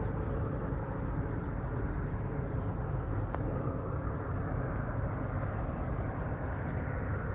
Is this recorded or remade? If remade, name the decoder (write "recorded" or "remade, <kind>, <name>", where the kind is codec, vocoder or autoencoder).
recorded